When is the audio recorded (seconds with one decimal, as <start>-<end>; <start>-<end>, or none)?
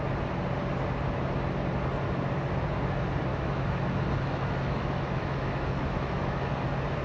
0.0-3.3; 6.5-7.0